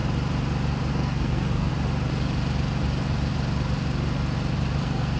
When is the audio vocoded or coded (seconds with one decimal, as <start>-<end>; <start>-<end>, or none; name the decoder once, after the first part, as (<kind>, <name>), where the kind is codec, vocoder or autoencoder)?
0.9-1.7 (codec, SNAC); 4.8-5.2